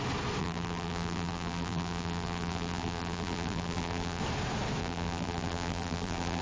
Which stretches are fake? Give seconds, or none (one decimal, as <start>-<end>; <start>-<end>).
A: 0.4-4.2; 4.8-6.4